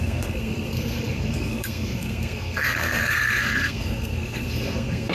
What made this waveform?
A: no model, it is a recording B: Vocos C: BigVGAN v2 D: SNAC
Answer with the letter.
D